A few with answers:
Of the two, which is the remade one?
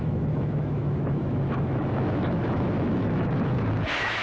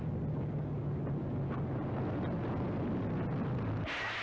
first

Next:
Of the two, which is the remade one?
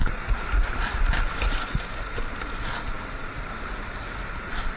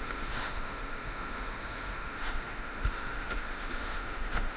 second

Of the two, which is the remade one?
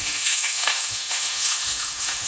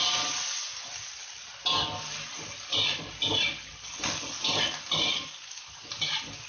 first